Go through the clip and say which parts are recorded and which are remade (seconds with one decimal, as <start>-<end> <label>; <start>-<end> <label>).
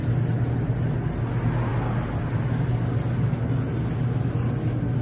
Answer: 0.0-5.0 recorded